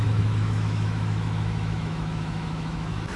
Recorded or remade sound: remade